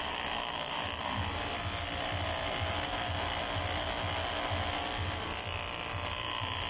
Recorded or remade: recorded